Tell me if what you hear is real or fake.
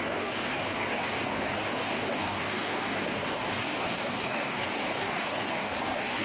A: fake